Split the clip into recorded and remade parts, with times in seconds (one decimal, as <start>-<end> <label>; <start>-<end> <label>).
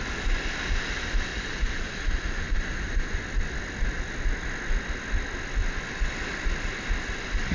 0.0-1.3 recorded; 1.3-3.2 remade; 3.2-7.5 recorded